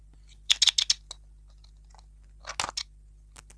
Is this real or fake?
real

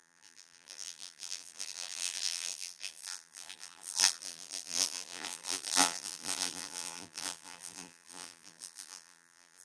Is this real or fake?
fake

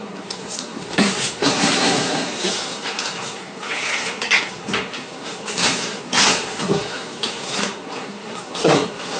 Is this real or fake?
fake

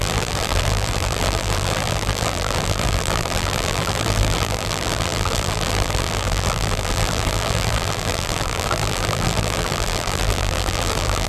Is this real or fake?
fake